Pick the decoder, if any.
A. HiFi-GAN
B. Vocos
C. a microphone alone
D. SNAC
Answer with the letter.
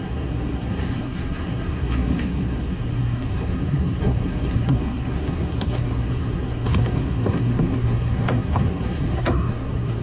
D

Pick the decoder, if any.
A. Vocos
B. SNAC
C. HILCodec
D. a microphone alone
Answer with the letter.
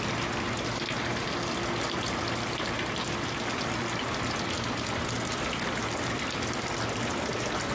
D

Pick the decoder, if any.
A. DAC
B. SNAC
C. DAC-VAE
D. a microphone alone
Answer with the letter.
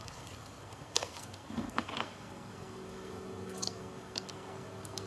B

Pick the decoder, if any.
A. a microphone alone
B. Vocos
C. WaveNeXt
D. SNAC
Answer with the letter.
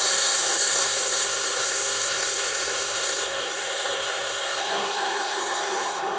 D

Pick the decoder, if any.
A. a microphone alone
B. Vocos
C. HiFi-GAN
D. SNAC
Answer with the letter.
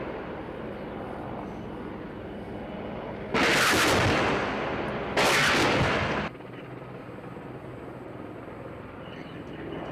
A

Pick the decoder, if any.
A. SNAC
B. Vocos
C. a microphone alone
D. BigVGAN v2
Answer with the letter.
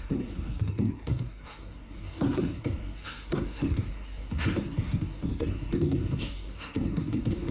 A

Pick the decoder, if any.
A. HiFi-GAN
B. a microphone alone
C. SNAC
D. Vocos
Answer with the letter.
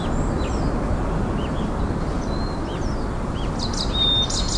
B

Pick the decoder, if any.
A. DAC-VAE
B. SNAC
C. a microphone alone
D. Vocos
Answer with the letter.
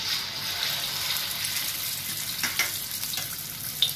C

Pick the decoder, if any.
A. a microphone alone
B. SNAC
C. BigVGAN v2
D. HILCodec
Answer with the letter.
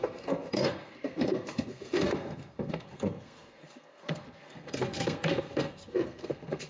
B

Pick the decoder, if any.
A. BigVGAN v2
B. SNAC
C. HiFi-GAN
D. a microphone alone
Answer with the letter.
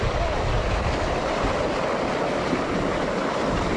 D